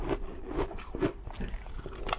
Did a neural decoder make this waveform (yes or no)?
no